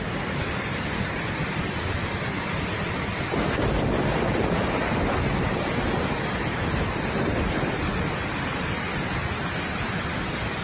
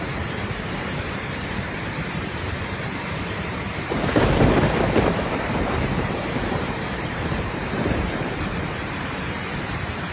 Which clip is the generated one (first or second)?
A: second